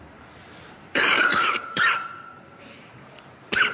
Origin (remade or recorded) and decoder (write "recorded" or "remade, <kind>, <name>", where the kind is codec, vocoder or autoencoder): remade, vocoder, BigVGAN v2